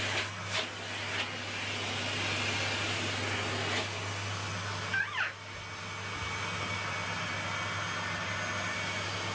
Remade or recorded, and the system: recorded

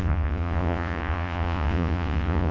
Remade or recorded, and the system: remade, vocoder, Vocos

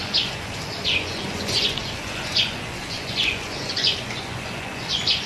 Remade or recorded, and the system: remade, vocoder, Vocos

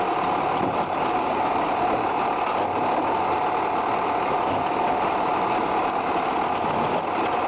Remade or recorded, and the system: recorded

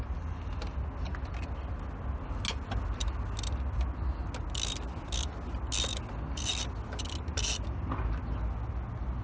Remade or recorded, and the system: recorded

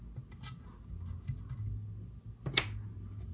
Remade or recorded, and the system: recorded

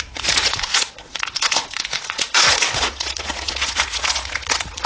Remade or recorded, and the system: remade, vocoder, Vocos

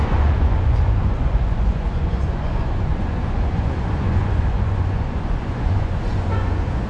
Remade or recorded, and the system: remade, vocoder, Vocos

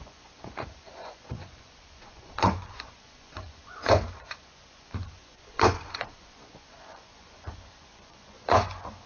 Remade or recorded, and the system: remade, vocoder, Vocos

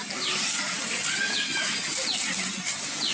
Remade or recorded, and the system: recorded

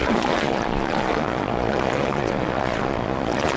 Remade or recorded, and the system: remade, vocoder, Vocos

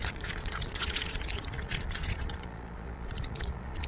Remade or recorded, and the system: remade, vocoder, Vocos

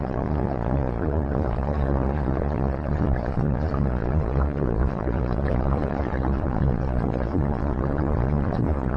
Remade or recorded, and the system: remade, vocoder, Vocos